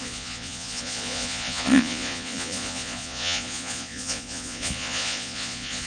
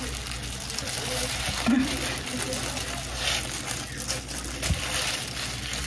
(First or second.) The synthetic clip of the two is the first